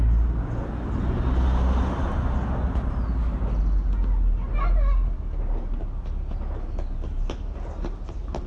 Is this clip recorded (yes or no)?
yes